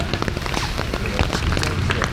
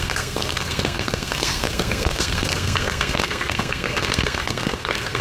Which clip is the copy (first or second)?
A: second